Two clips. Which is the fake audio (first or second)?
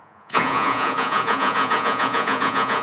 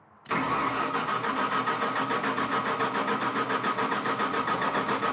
first